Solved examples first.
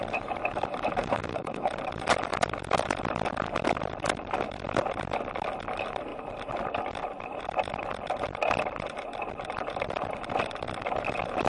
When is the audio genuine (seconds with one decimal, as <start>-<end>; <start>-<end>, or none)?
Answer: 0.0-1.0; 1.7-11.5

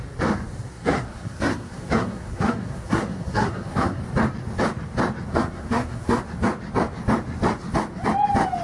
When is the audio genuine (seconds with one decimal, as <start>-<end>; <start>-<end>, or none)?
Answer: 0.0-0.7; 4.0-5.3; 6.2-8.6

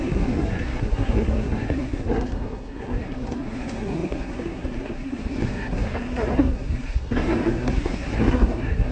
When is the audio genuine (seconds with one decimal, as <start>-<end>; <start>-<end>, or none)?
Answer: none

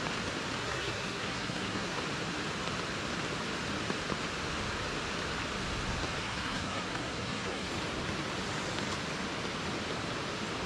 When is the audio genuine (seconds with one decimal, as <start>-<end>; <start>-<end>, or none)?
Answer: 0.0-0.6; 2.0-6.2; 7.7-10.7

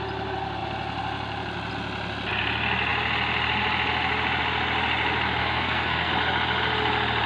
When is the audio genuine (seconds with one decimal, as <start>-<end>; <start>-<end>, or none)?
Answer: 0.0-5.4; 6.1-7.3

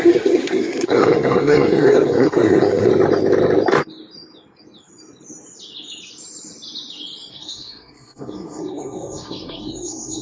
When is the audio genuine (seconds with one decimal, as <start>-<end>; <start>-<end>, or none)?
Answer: 2.9-7.3

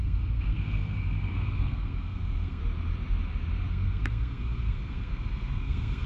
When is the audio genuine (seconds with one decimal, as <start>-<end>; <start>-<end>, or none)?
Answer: 2.6-3.7

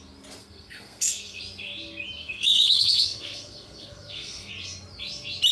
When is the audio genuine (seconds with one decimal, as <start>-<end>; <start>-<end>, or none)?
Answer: 0.0-0.4; 1.4-2.2; 4.5-5.5